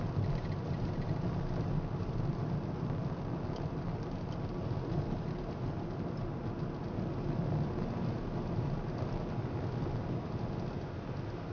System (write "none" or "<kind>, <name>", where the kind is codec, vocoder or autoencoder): none